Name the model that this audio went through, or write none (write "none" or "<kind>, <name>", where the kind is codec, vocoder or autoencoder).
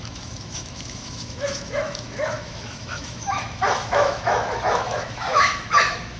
autoencoder, DAC-VAE